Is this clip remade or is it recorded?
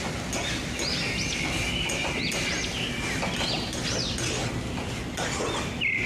recorded